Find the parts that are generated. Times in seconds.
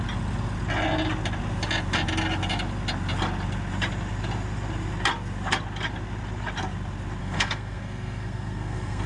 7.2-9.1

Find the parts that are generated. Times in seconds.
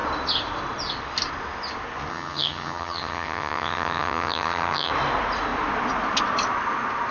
2.1-4.9